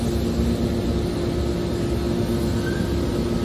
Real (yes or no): yes